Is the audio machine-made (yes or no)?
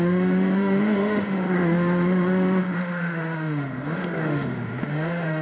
yes